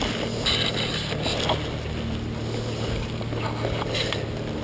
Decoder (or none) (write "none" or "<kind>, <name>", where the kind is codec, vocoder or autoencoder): none